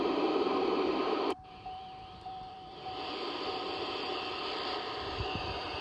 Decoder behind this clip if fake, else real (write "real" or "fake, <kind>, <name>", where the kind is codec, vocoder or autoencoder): fake, vocoder, BigVGAN v2